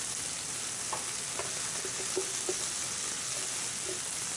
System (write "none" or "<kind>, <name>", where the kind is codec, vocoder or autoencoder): none